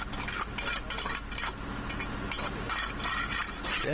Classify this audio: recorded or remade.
recorded